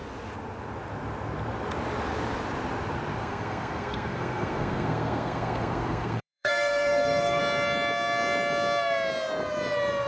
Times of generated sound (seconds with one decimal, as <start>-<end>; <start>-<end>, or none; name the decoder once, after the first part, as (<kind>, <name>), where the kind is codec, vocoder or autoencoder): 3.2-7.4 (codec, SNAC)